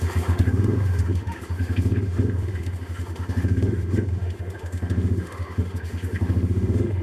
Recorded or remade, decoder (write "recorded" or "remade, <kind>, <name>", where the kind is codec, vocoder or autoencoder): remade, autoencoder, DAC-VAE